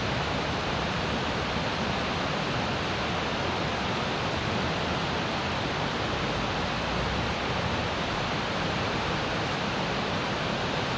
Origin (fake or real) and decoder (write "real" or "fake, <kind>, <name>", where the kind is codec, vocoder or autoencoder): real